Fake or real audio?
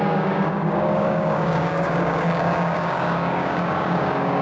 fake